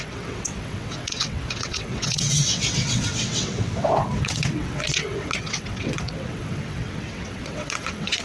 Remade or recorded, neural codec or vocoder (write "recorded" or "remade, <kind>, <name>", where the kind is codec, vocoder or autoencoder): remade, vocoder, WaveNeXt